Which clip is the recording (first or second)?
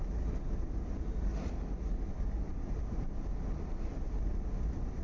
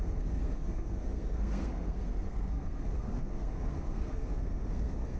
first